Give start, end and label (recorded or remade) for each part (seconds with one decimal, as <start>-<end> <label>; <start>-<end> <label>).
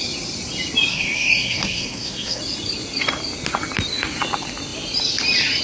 0.0-0.9 recorded; 0.9-2.4 remade; 2.4-5.6 recorded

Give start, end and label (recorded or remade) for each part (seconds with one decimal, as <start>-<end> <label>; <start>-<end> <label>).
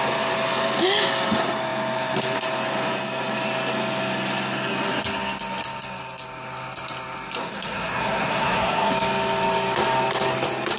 0.0-7.4 recorded; 7.4-8.9 remade; 8.9-10.8 recorded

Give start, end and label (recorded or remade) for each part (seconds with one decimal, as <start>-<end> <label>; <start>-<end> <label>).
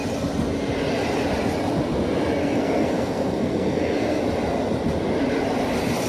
0.0-2.4 recorded; 2.4-4.2 remade; 4.2-6.1 recorded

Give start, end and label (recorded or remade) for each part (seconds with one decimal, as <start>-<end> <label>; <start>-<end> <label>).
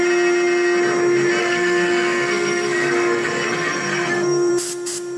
0.0-1.4 recorded; 1.4-4.5 remade; 4.5-5.2 recorded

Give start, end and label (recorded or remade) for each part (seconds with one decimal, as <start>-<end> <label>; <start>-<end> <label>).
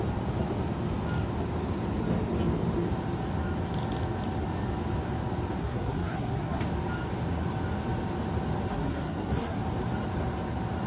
0.0-5.6 recorded; 5.6-6.6 remade; 6.6-8.7 recorded; 8.7-9.6 remade; 9.6-10.9 recorded